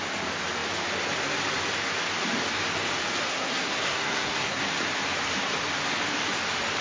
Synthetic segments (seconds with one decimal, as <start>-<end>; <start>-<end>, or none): 3.3-4.6